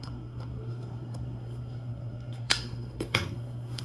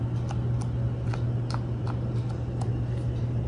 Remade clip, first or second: first